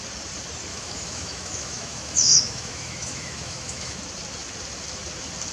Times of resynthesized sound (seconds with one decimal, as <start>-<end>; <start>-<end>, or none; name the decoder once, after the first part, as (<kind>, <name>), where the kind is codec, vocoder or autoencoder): 0.7-4.0 (autoencoder, DAC-VAE)

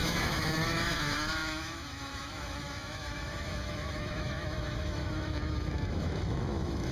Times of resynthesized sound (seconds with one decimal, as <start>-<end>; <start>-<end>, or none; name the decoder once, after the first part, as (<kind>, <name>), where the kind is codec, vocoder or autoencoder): 0.0-6.9 (autoencoder, DAC-VAE)

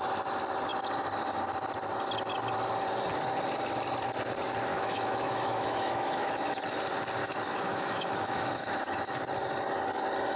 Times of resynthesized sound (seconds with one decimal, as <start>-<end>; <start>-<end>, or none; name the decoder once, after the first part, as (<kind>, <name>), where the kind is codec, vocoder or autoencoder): 4.7-6.7 (autoencoder, DAC-VAE); 7.2-9.2

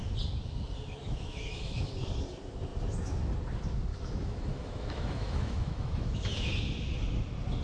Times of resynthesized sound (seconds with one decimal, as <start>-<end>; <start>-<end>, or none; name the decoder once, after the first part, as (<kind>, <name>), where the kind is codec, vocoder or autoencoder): 1.0-1.9 (autoencoder, DAC-VAE); 3.9-6.5

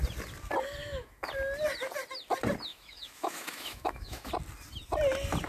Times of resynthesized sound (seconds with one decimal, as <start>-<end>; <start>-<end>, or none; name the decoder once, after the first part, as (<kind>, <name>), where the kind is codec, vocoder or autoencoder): 0.8-1.3 (autoencoder, DAC-VAE); 2.7-4.3

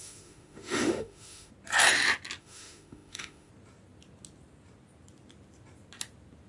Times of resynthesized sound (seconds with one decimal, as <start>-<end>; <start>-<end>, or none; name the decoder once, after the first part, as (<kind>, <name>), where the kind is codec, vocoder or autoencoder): 0.0-1.5 (autoencoder, DAC-VAE); 2.4-3.5

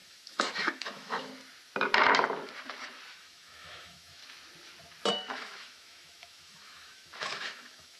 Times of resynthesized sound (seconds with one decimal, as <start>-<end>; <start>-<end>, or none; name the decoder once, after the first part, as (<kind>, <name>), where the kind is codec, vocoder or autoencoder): 0.0-1.3 (autoencoder, DAC-VAE); 3.1-4.2; 5.1-8.0